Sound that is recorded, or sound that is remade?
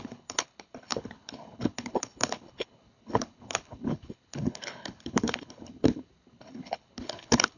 remade